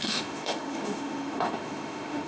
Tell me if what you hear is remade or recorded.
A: remade